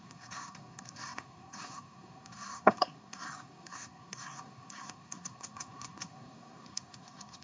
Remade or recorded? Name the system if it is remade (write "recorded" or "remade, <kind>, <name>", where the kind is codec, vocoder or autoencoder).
remade, codec, SNAC